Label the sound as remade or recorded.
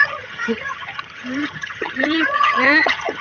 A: remade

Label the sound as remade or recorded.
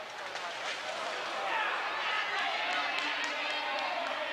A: recorded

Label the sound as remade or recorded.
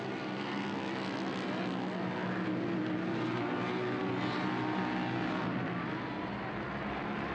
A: recorded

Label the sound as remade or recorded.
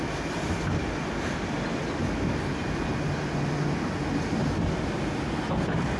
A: recorded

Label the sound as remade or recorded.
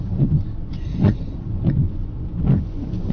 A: remade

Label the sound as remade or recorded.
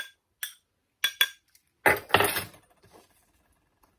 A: recorded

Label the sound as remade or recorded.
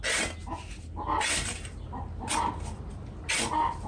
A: recorded